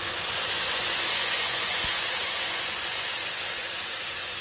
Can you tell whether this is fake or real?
fake